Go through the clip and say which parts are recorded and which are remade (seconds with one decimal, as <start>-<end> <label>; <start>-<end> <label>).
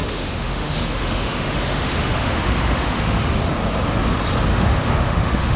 0.0-3.4 remade; 3.4-4.5 recorded; 4.5-5.6 remade